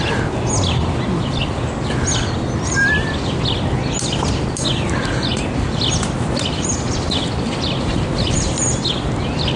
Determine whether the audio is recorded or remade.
recorded